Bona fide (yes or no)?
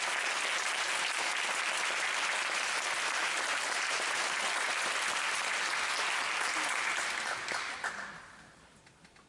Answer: yes